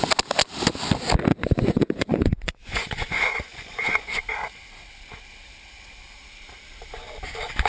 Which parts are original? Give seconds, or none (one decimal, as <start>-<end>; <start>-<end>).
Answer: 0.0-1.3; 4.2-7.7